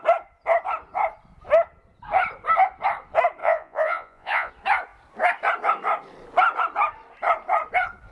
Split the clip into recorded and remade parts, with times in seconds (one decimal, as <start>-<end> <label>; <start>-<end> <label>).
0.0-3.4 recorded; 3.4-4.5 remade; 4.5-8.1 recorded